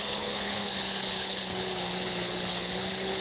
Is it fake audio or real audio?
fake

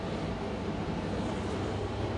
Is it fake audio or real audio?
real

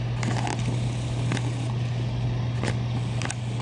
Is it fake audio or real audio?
real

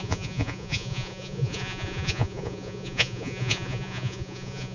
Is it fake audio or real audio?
fake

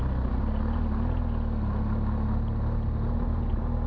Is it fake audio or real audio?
real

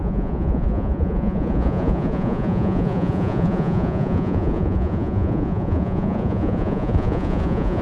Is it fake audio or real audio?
fake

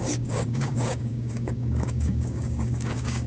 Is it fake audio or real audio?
fake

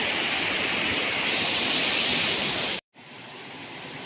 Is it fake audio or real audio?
fake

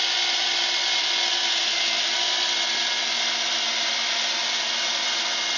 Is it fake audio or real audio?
real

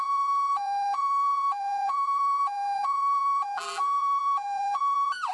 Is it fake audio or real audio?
fake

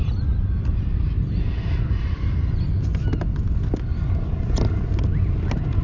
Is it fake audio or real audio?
real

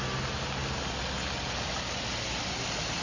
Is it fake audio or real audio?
real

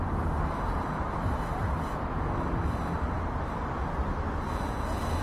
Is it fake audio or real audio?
real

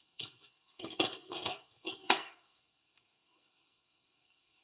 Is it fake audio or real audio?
fake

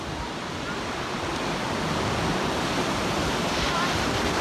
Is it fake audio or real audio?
real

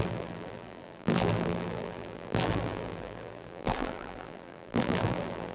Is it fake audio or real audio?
fake